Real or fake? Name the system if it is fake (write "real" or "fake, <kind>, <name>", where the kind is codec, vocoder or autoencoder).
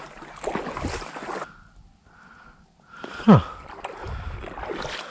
real